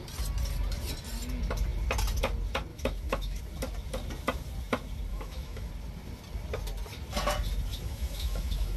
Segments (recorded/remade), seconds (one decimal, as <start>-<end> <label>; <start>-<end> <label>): 0.0-2.7 recorded; 2.7-3.4 remade; 3.4-5.1 recorded; 5.1-5.7 remade; 5.7-7.7 recorded; 7.7-8.8 remade